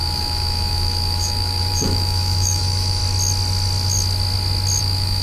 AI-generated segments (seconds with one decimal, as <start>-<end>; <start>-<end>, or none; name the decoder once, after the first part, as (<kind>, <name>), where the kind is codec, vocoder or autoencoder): 0.0-3.0 (autoencoder, DAC-VAE); 4.8-5.2

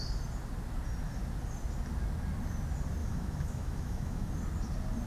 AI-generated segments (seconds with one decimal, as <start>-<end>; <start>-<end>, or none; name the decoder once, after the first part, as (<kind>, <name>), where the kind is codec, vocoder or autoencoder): 3.0-4.3 (autoencoder, DAC-VAE)

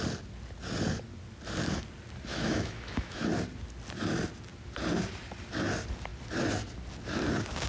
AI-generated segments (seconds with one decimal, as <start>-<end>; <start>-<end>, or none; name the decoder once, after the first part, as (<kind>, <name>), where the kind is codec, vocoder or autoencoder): 2.3-3.3 (autoencoder, DAC-VAE)

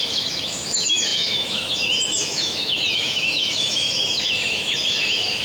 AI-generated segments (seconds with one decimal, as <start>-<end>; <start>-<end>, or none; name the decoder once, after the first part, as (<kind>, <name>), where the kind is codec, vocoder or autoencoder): 0.0-5.4 (autoencoder, DAC-VAE)

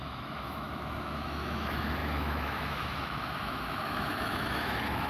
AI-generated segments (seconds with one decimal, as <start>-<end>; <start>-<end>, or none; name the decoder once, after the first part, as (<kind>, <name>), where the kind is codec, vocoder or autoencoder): 0.0-5.1 (autoencoder, DAC-VAE)

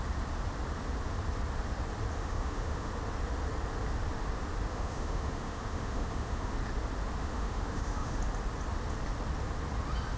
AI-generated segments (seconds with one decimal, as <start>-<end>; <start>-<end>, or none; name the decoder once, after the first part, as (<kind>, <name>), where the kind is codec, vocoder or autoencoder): 2.2-2.9 (autoencoder, DAC-VAE); 4.7-6.5; 7.2-8.2